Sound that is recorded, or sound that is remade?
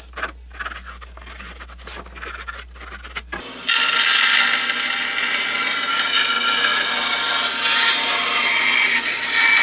recorded